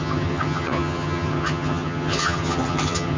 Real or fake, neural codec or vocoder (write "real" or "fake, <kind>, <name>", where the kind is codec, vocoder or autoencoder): fake, vocoder, HiFi-GAN